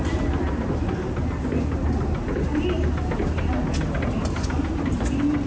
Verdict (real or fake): real